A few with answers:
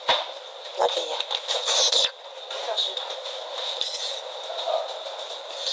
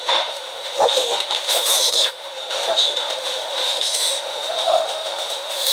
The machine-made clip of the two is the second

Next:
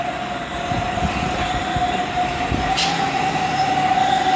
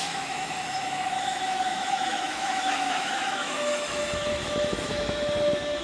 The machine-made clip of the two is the second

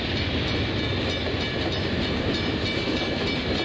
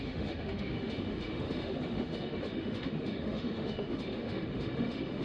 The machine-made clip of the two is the second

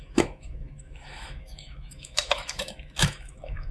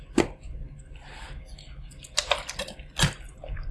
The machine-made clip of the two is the first